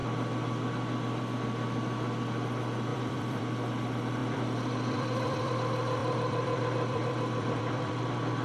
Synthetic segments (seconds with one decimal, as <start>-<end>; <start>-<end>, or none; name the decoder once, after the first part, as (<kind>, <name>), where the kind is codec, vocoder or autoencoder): 2.9-3.4 (vocoder, BigVGAN v2); 4.2-5.5; 6.0-7.9